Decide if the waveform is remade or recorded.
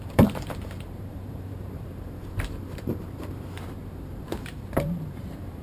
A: remade